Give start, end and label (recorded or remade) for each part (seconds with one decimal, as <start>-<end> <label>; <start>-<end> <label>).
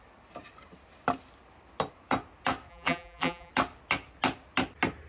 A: 0.0-2.7 recorded; 2.7-3.5 remade; 3.5-5.1 recorded